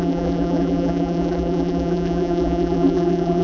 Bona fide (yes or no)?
no